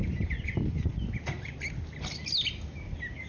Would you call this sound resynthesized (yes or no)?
no